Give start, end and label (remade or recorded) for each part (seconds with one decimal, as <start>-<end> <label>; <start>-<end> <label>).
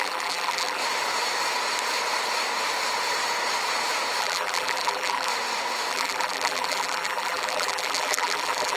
0.0-0.8 remade; 0.8-4.2 recorded; 4.2-5.3 remade; 5.3-5.9 recorded; 5.9-8.8 remade